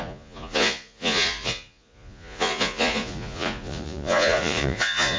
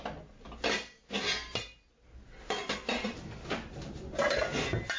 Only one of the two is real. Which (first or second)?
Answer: second